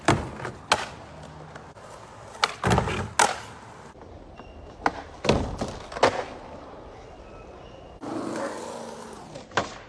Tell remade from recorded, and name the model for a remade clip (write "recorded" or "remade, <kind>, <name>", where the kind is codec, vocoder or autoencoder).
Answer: recorded